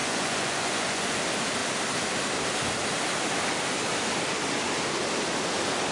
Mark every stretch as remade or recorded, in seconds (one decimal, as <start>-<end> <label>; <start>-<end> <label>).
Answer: 0.0-1.2 remade; 1.2-5.9 recorded